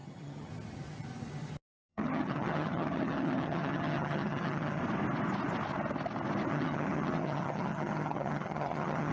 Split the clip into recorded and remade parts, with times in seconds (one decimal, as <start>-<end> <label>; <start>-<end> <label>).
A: 0.0-0.5 remade; 0.5-1.9 recorded; 1.9-4.8 remade; 4.8-6.5 recorded; 6.5-9.1 remade